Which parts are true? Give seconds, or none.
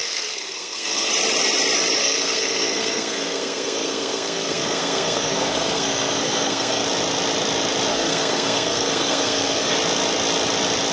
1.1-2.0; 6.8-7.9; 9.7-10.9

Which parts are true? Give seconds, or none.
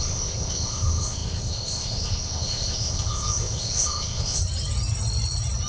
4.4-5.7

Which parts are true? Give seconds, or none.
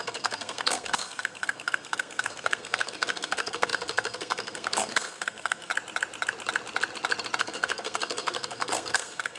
5.7-7.4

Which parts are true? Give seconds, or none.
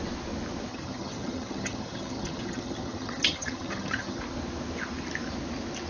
0.0-0.7; 4.2-5.9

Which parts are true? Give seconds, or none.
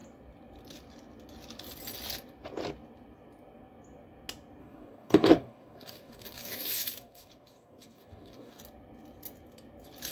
0.0-4.6; 8.6-10.1